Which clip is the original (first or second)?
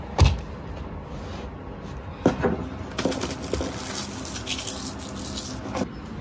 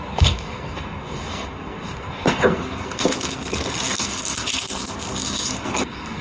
first